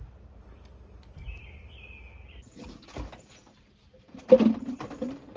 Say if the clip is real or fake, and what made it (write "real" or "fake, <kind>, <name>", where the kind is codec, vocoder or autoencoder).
real